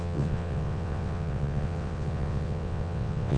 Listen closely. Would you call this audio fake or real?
fake